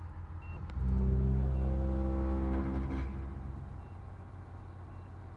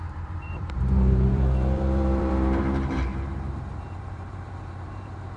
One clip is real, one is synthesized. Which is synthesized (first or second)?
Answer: second